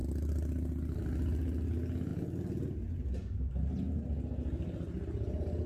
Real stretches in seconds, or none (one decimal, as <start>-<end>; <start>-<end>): 1.0-5.7